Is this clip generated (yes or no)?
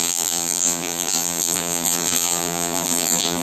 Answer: yes